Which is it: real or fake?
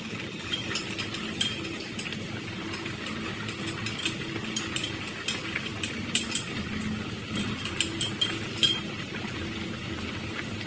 real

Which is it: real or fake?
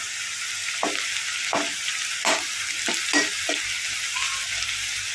real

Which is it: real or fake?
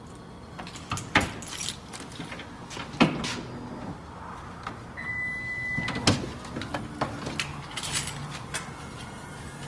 real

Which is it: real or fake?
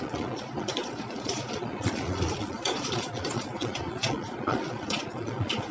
fake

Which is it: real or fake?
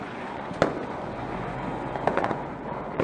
fake